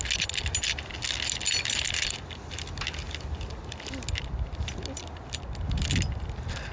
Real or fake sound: real